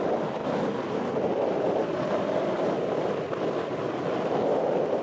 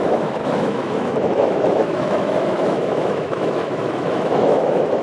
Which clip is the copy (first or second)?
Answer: second